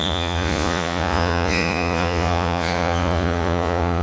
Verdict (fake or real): fake